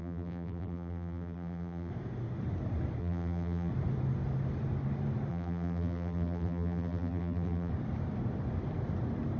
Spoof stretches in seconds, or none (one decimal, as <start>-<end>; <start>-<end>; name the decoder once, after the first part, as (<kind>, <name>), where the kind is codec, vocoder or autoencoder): 0.0-1.9 (vocoder, BigVGAN v2); 3.0-3.7; 5.3-7.7